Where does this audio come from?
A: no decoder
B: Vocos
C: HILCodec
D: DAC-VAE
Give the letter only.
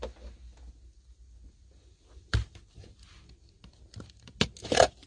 A